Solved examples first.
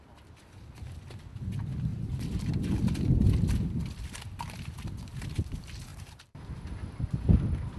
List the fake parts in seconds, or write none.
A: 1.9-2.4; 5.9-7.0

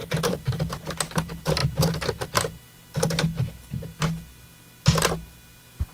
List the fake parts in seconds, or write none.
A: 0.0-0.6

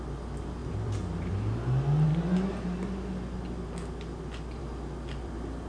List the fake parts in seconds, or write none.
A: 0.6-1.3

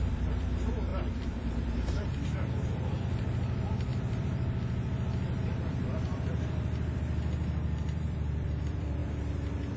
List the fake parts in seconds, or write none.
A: 0.0-9.8

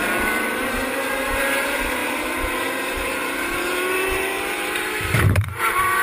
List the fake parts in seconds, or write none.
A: 0.0-6.0